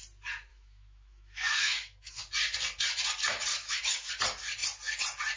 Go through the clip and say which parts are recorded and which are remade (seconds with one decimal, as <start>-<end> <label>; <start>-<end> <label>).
0.0-0.5 recorded; 0.5-2.2 remade; 2.2-3.5 recorded; 3.5-4.1 remade; 4.1-5.4 recorded